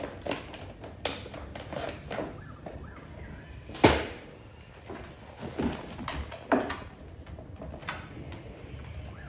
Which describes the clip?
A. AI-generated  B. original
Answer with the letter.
B